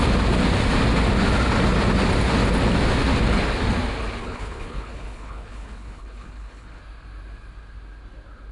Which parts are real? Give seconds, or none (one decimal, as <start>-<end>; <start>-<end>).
0.0-4.2; 6.8-8.5